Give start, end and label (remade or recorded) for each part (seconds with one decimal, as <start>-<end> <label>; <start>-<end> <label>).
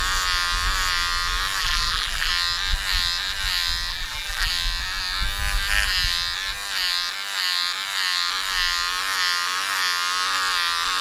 0.0-1.6 recorded; 1.6-2.3 remade; 2.3-3.9 recorded; 3.9-4.5 remade; 4.5-11.0 recorded